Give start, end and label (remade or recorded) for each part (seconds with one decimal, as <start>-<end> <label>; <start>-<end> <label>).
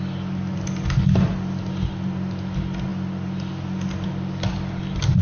0.0-5.2 recorded